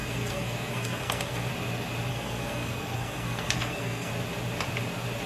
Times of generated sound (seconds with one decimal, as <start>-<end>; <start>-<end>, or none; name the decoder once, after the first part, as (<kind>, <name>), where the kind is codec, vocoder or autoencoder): 0.0-1.5 (codec, SNAC); 2.1-4.1